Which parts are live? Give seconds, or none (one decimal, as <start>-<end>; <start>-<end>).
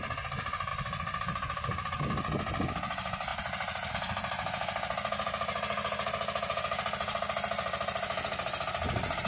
0.0-0.7; 2.0-3.3; 3.9-9.3